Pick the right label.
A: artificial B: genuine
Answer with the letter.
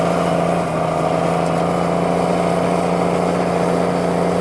B